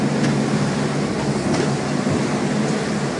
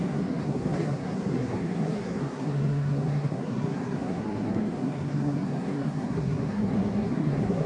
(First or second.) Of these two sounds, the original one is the first